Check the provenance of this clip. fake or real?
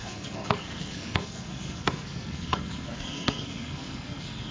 fake